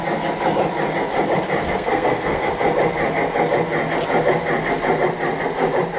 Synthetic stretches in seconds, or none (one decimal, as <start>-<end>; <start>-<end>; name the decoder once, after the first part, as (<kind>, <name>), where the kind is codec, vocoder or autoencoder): 1.6-2.5 (codec, SNAC)